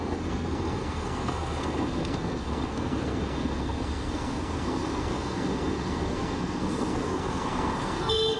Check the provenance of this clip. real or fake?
fake